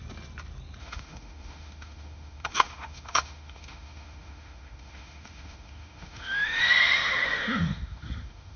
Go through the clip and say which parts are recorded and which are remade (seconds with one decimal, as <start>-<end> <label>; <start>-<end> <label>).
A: 0.0-0.8 recorded; 0.8-8.6 remade

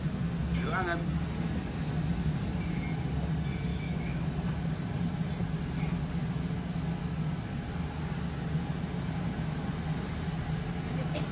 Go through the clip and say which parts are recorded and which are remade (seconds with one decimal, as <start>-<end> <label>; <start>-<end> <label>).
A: 0.0-3.7 recorded; 3.7-4.3 remade; 4.3-11.3 recorded

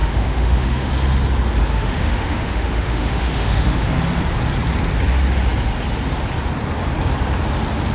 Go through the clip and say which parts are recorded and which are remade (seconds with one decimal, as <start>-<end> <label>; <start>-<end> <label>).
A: 0.0-0.9 remade; 0.9-1.7 recorded; 1.7-4.0 remade; 4.0-7.9 recorded

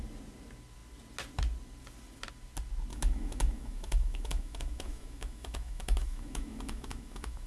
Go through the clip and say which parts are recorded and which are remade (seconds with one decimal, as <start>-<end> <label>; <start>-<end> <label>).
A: 0.0-2.9 recorded; 2.9-7.5 remade